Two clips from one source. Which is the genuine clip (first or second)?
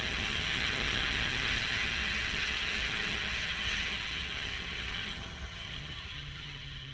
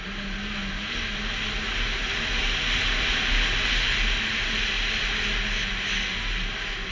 second